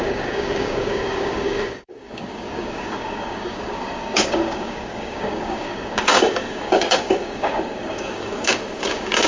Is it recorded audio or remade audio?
remade